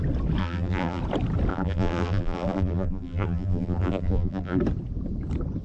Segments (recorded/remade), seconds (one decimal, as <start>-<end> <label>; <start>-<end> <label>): 0.0-0.4 recorded; 0.4-1.0 remade; 1.0-1.5 recorded; 1.5-4.6 remade; 4.6-5.6 recorded